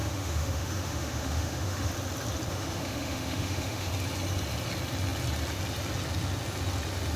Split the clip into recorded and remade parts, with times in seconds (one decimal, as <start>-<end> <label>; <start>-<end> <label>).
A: 0.0-1.9 remade; 1.9-2.5 recorded; 2.5-3.9 remade; 3.9-7.2 recorded